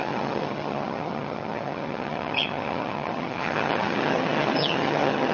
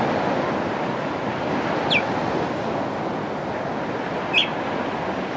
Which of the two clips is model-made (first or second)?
first